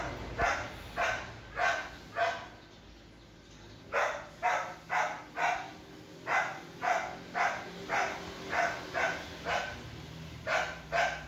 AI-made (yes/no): no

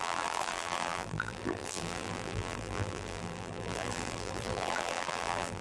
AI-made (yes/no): yes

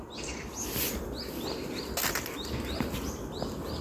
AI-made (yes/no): no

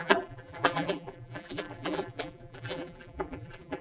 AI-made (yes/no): yes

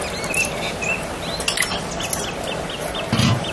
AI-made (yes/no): no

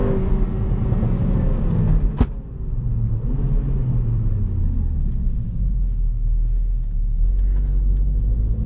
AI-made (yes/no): no